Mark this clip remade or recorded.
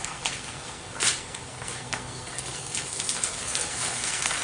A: remade